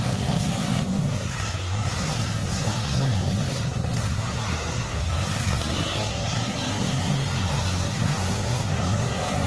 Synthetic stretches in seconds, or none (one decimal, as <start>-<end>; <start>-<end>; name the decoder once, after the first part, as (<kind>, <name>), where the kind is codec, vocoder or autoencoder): 0.0-9.5 (codec, SNAC)